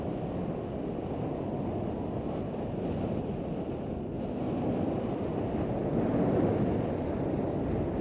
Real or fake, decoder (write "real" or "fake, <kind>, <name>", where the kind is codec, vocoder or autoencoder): real